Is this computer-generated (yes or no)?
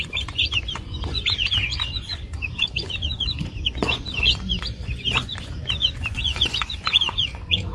yes